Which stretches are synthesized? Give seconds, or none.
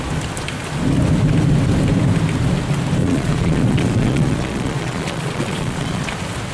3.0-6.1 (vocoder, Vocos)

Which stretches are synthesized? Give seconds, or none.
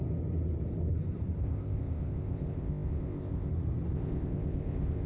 1.4-3.5 (codec, ZipCodec); 3.9-5.1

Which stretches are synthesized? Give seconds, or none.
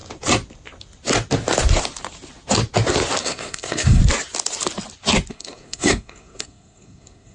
3.2-4.0 (codec, SNAC); 5.3-7.3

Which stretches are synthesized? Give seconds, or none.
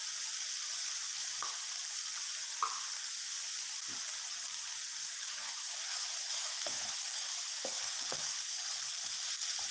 5.0-7.8 (autoencoder, DAC-VAE)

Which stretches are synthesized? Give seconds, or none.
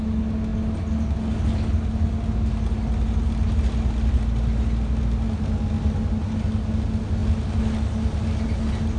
none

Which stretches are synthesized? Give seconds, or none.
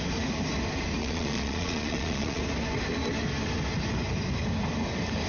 1.0-2.4 (vocoder, Vocos)